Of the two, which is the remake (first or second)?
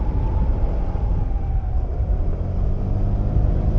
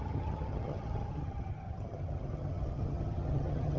second